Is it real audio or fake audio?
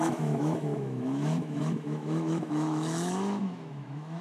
fake